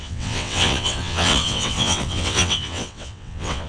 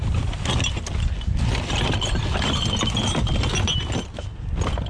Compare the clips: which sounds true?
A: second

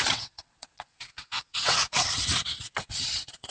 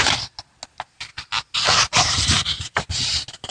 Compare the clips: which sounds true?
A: second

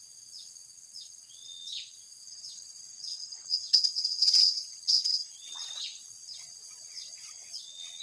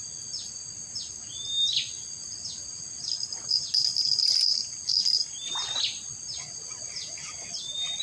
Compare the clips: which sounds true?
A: second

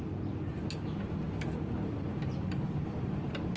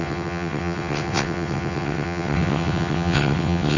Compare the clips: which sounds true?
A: first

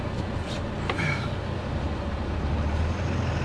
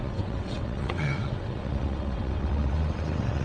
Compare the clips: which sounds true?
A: first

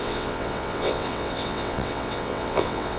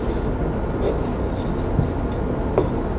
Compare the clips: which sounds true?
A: second